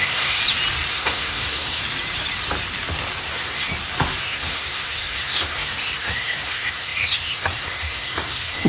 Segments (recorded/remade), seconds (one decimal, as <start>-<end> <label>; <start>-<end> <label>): 0.0-0.4 remade; 0.4-0.9 recorded; 0.9-1.8 remade; 1.8-3.2 recorded; 3.2-3.7 remade; 3.7-4.2 recorded; 4.2-8.7 remade